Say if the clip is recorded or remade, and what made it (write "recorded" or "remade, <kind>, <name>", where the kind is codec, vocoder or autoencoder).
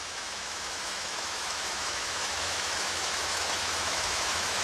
remade, autoencoder, DAC-VAE